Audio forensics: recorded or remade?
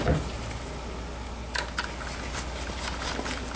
recorded